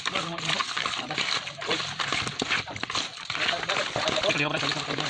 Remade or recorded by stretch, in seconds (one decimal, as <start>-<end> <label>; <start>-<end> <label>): 0.0-5.1 recorded